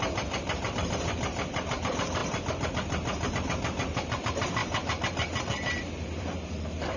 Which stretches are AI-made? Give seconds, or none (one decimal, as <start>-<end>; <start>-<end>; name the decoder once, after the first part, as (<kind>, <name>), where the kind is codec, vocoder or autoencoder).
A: 0.0-2.2 (vocoder, BigVGAN v2); 3.3-4.6; 5.4-7.0